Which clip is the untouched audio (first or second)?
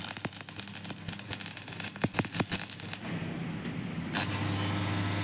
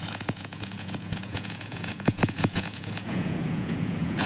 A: first